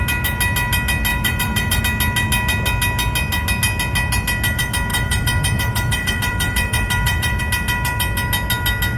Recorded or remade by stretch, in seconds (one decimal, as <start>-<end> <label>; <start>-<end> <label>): 0.0-1.1 recorded; 1.1-1.8 remade; 1.8-4.9 recorded; 4.9-7.4 remade; 7.4-9.0 recorded

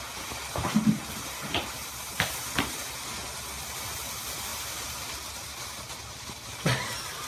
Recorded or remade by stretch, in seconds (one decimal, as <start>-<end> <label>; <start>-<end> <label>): 0.0-4.5 recorded; 4.5-5.3 remade; 5.3-7.3 recorded

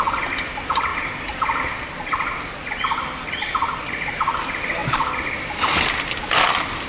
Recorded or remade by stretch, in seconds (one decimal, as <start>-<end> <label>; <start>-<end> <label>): 0.0-6.9 recorded